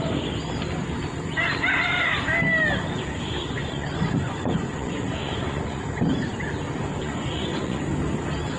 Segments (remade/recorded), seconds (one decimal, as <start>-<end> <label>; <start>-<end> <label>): 0.0-3.4 recorded; 3.4-5.8 remade; 5.8-7.0 recorded; 7.0-7.8 remade; 7.8-8.6 recorded